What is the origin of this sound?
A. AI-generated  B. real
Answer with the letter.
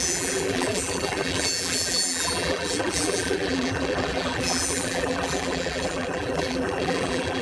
A